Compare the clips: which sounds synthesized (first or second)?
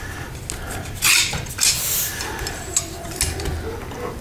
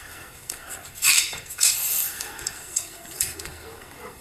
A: second